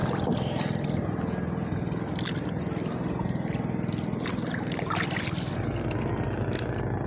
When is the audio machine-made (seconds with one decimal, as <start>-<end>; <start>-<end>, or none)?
none